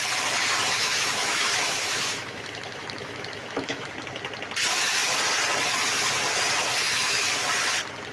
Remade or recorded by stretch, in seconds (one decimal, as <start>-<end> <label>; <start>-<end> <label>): 0.0-0.8 recorded; 0.8-3.9 remade; 3.9-6.7 recorded; 6.7-7.3 remade; 7.3-8.1 recorded